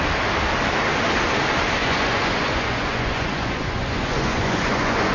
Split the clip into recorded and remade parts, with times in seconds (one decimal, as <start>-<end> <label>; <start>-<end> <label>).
0.0-1.8 recorded; 1.8-5.1 remade